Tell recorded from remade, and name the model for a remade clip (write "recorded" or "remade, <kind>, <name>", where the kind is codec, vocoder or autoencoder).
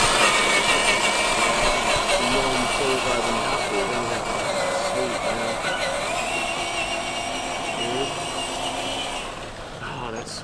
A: recorded